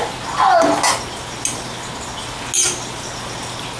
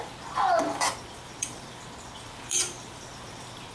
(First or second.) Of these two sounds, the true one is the first